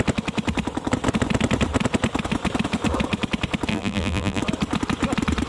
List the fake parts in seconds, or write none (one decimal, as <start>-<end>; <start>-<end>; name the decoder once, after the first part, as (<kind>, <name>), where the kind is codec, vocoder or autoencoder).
3.7-4.4 (vocoder, BigVGAN v2)